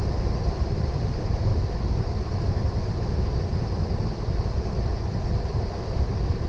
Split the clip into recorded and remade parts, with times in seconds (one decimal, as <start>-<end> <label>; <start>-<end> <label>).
0.0-1.5 remade; 1.5-3.0 recorded; 3.0-3.8 remade; 3.8-6.5 recorded